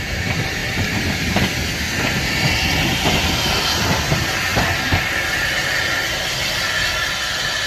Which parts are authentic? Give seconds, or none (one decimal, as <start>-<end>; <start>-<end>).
0.0-7.7